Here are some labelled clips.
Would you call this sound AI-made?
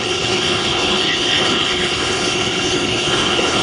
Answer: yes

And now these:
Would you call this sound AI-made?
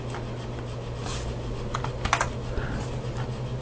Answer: no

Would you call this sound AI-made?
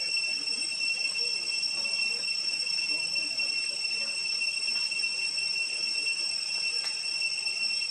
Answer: no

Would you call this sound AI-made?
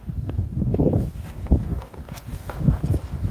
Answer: yes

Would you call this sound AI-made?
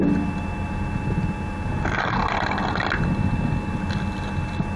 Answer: no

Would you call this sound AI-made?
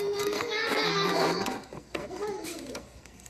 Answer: yes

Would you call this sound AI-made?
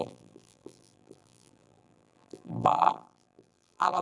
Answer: yes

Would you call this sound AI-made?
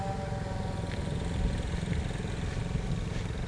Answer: no